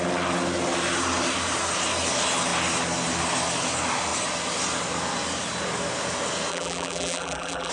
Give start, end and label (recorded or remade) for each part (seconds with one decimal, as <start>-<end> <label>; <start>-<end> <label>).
0.0-6.5 recorded; 6.5-7.7 remade